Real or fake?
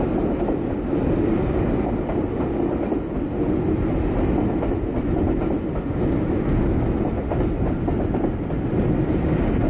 real